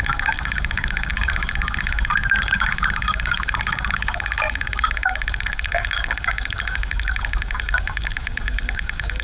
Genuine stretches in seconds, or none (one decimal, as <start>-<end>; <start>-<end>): none